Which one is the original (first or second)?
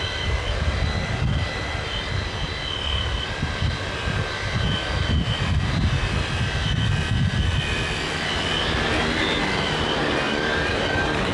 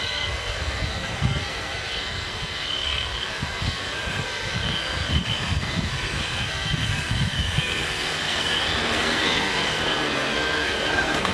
first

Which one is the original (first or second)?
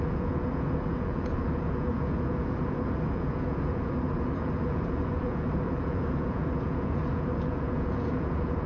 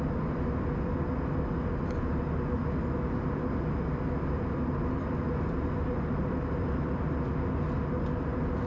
second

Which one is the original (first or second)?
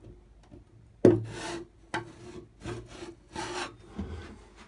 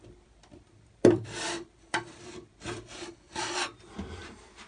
first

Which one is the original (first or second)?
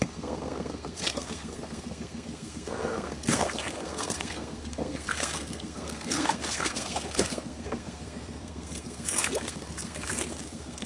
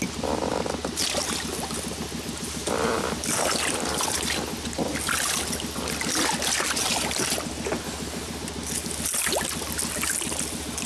second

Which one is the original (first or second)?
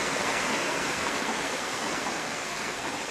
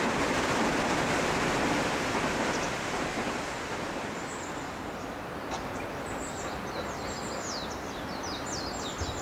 second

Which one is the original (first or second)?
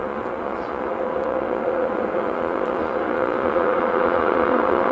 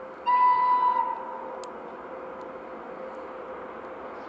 second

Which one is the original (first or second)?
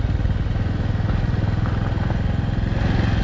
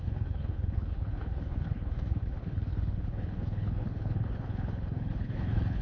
first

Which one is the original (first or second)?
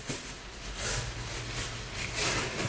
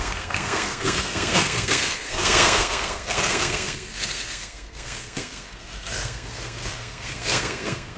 first